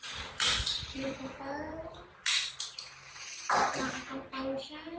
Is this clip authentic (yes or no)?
yes